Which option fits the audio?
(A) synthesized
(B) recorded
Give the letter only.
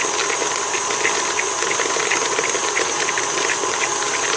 B